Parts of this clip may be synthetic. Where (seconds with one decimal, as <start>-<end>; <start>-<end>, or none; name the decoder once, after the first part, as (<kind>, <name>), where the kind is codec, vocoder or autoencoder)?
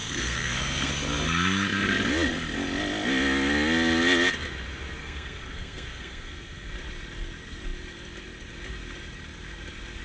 0.0-0.9 (codec, SNAC); 5.0-6.7